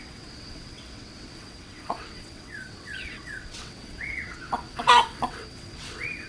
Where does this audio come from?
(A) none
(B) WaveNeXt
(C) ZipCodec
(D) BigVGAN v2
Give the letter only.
B